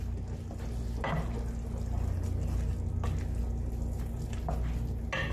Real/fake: real